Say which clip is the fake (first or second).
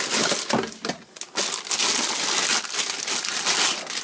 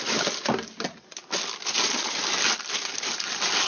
second